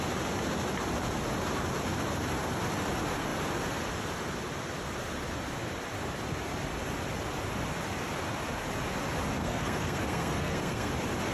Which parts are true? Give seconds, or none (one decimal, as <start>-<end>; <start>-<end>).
0.0-9.4; 10.9-11.3

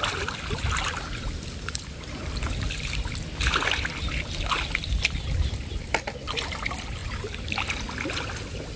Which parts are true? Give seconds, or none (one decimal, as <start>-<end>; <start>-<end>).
0.0-8.8

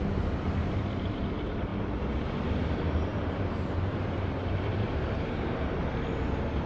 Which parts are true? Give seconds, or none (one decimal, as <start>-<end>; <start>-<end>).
1.7-2.5; 5.8-6.7

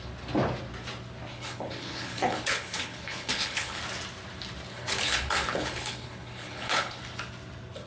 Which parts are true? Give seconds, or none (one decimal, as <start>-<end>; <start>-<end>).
0.0-1.3; 3.8-4.7; 7.0-7.9

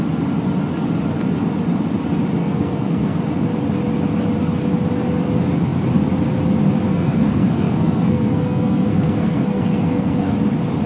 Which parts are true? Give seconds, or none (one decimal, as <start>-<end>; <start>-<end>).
0.0-2.4; 3.2-6.9; 10.3-10.9

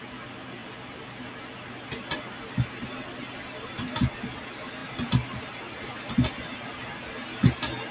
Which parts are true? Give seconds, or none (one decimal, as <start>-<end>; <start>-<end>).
0.0-7.9

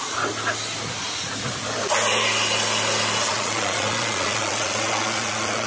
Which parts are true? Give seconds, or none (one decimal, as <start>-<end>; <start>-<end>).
0.0-3.3